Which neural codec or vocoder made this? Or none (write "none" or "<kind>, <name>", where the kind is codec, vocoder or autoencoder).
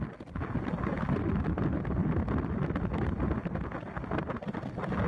none